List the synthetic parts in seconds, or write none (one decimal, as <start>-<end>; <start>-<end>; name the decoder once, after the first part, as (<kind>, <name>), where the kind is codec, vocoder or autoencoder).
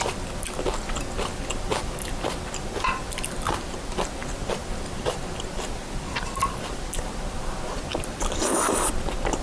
none